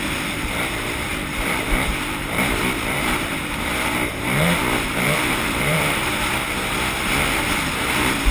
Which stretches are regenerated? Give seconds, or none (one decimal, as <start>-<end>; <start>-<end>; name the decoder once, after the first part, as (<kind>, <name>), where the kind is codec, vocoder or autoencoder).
0.0-6.1 (vocoder, BigVGAN v2); 7.8-8.3